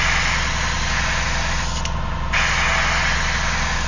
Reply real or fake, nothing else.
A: real